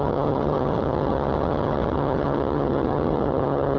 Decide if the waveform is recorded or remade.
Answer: remade